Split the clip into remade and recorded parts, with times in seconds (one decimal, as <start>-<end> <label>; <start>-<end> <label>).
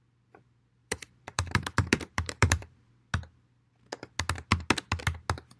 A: 0.0-0.8 recorded; 0.8-2.9 remade; 2.9-5.6 recorded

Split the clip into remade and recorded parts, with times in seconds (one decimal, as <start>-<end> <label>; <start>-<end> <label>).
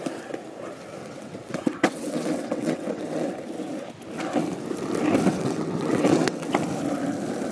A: 0.0-1.0 recorded; 1.0-3.3 remade; 3.3-5.3 recorded; 5.3-6.5 remade; 6.5-7.5 recorded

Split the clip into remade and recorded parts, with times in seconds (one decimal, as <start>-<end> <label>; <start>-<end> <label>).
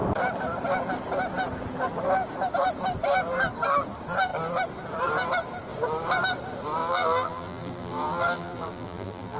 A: 0.0-6.8 recorded; 6.8-9.4 remade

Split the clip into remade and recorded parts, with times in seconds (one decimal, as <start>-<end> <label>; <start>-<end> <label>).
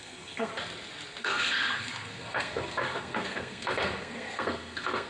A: 0.0-0.5 remade; 0.5-1.2 recorded; 1.2-5.1 remade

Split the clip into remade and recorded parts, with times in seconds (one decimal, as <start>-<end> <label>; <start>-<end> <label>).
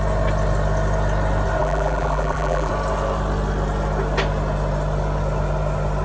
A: 0.0-1.6 recorded; 1.6-2.7 remade; 2.7-6.0 recorded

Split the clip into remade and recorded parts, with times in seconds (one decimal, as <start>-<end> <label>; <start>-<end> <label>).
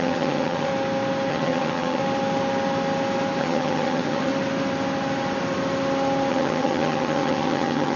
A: 0.0-0.7 remade; 0.7-1.3 recorded; 1.3-2.0 remade; 2.0-3.4 recorded; 3.4-4.3 remade; 4.3-6.3 recorded; 6.3-8.0 remade